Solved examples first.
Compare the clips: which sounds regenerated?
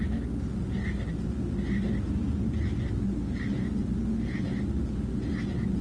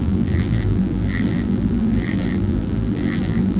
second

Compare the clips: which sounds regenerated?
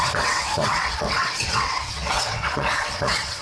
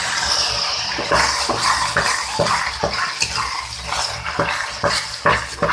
first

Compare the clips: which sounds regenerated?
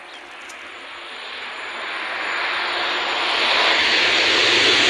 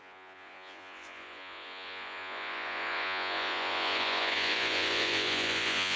second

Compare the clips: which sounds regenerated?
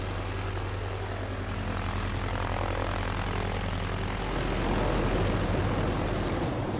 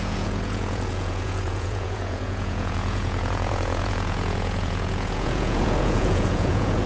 second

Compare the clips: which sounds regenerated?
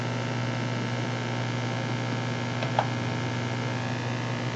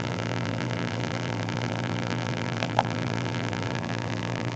second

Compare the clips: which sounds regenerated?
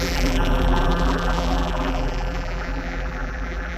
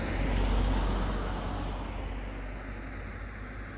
first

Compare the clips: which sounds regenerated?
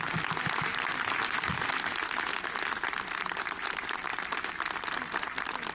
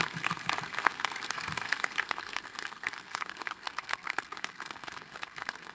second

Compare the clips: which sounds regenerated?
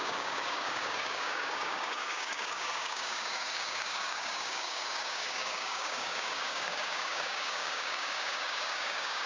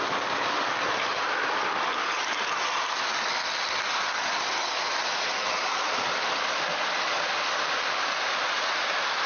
first